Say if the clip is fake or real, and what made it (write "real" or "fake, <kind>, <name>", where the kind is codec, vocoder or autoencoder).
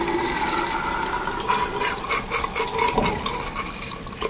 real